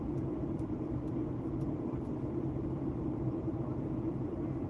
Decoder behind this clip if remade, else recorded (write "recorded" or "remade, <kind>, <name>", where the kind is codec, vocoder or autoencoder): remade, vocoder, BigVGAN v2